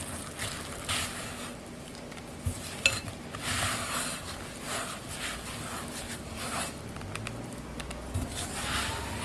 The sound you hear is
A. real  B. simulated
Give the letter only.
A